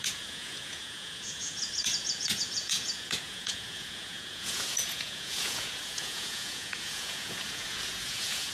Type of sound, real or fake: fake